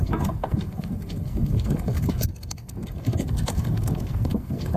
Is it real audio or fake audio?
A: fake